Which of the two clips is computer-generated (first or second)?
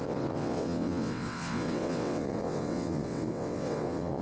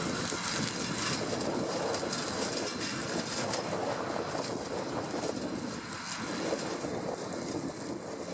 first